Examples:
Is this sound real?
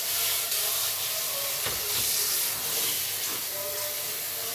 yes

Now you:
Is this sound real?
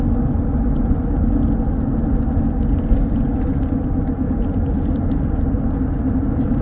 yes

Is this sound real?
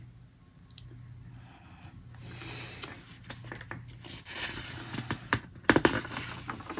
yes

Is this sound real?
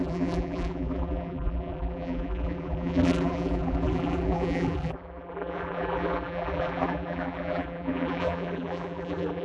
no